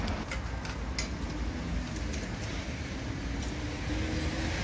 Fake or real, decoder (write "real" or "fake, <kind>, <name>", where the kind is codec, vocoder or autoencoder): real